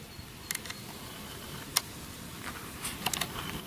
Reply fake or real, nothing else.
real